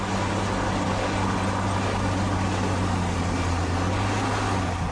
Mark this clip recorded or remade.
recorded